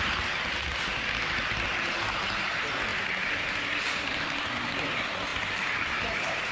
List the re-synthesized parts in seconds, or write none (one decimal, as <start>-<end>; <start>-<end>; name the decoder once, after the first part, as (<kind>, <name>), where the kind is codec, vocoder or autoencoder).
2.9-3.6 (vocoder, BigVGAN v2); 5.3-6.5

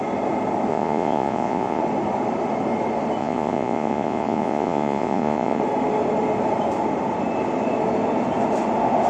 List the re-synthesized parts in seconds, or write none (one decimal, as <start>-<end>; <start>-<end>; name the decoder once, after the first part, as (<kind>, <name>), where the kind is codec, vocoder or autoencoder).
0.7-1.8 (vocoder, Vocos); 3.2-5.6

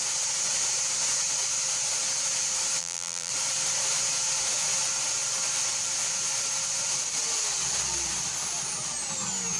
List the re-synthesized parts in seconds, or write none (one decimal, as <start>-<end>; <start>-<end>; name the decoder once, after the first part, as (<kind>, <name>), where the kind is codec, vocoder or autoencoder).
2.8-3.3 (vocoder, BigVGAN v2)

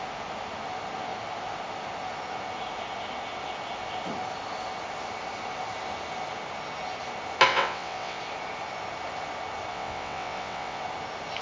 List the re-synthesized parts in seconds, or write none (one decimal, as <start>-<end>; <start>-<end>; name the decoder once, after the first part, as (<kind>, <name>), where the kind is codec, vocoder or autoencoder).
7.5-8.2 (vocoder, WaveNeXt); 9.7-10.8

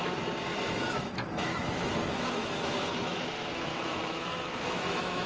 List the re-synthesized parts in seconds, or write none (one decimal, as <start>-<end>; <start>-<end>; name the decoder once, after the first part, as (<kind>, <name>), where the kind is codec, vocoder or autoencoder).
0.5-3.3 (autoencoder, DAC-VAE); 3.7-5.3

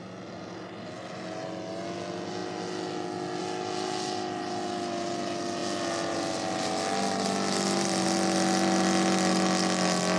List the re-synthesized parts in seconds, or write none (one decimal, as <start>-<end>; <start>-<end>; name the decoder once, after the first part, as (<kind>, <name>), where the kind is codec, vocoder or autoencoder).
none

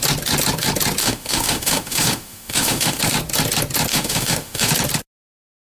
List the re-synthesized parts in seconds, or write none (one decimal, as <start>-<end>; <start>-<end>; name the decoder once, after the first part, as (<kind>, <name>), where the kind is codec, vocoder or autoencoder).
1.0-3.0 (autoencoder, DAC-VAE); 3.9-4.7

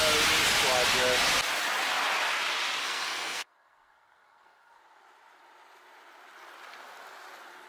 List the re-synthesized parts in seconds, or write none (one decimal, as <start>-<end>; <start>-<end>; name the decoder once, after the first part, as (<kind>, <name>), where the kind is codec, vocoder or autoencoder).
2.8-4.8 (codec, SNAC)